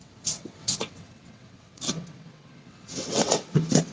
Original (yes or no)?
no